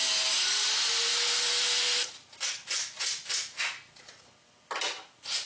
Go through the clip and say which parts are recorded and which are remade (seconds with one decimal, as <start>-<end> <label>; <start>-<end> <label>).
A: 0.0-5.5 recorded